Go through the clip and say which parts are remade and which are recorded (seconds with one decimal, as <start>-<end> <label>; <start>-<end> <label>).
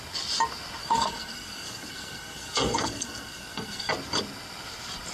0.0-0.8 recorded; 0.8-3.9 remade; 3.9-5.1 recorded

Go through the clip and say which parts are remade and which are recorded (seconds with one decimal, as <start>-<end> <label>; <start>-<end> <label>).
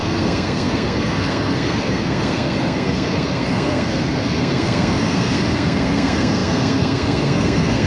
0.0-7.9 remade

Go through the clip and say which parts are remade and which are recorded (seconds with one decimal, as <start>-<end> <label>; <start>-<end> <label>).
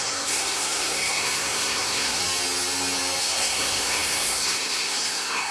0.0-2.2 remade; 2.2-3.2 recorded; 3.2-5.5 remade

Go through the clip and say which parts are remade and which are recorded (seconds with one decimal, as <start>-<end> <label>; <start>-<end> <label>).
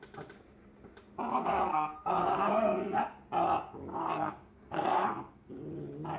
0.0-1.3 recorded; 1.3-3.0 remade; 3.0-3.9 recorded; 3.9-5.5 remade; 5.5-6.2 recorded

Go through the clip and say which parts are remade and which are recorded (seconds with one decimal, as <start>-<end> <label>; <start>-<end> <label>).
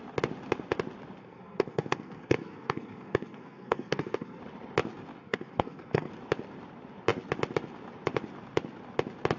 0.0-1.2 recorded; 1.2-4.4 remade; 4.4-5.2 recorded; 5.2-6.1 remade; 6.1-9.4 recorded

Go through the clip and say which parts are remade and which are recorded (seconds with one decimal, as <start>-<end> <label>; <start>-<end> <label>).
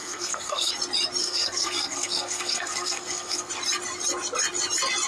0.0-0.7 remade; 0.7-1.2 recorded; 1.2-3.5 remade; 3.5-5.1 recorded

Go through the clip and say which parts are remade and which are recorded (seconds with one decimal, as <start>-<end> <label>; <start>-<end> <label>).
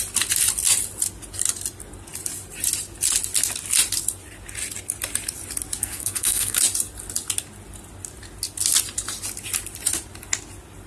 0.0-5.8 recorded; 5.8-6.6 remade; 6.6-10.9 recorded